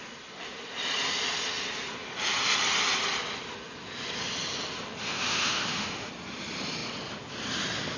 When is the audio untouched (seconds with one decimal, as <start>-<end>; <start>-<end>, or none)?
0.0-5.0; 6.1-8.0